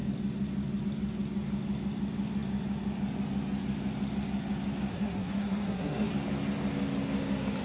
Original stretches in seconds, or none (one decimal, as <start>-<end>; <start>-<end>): 0.0-4.9; 6.1-7.6